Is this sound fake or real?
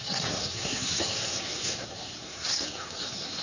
fake